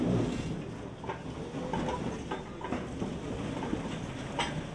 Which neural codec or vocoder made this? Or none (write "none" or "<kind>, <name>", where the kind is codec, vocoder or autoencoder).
none